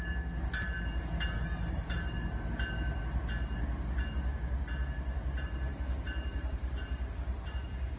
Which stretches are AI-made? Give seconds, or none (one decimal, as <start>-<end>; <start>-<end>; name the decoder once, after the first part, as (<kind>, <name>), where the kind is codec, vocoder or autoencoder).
none